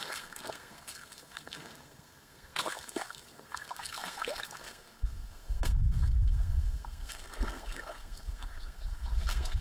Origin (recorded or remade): remade